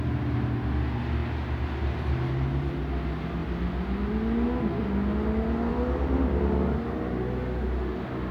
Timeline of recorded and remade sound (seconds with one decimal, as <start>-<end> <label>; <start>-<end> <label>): 0.0-8.3 recorded